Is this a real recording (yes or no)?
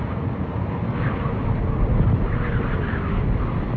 yes